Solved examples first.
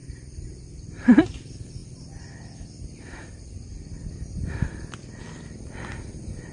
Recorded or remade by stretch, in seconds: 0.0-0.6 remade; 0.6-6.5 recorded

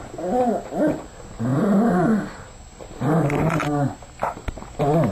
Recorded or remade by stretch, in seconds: 0.0-5.1 recorded

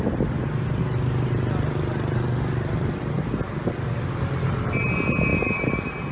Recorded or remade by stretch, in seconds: 0.0-5.3 recorded; 5.3-6.1 remade

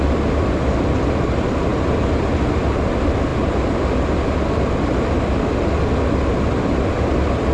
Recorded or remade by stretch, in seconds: 0.0-7.5 recorded

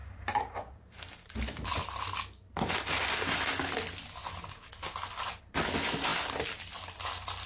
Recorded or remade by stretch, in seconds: 0.0-1.7 remade; 1.7-7.5 recorded

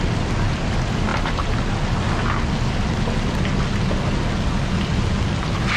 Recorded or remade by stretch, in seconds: 0.0-1.1 recorded; 1.1-1.7 remade; 1.7-5.8 recorded

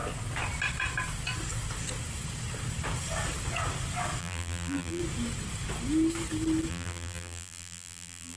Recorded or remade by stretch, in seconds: 0.0-4.2 recorded; 4.2-5.0 remade; 5.0-6.7 recorded; 6.7-8.4 remade

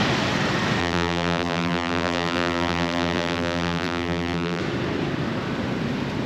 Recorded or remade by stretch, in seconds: 0.0-0.8 recorded; 0.8-4.6 remade; 4.6-6.3 recorded